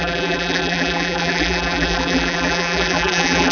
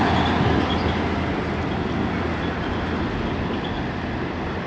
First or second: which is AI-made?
first